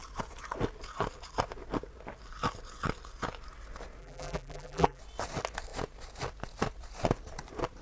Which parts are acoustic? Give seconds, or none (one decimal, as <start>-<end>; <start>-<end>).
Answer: 0.0-4.0; 5.0-7.8